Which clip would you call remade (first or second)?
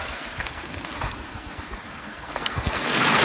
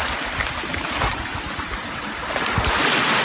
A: first